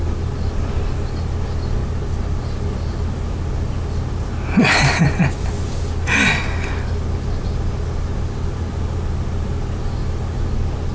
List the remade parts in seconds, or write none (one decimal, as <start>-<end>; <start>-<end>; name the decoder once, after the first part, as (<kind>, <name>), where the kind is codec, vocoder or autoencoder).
none